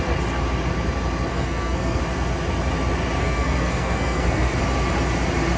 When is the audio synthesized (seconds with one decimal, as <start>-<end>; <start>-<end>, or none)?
1.3-2.0; 3.2-4.6